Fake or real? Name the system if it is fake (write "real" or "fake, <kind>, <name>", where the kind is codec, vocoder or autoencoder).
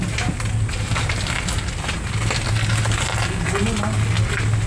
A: real